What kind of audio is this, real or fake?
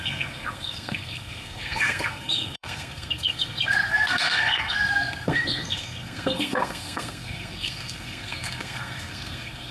fake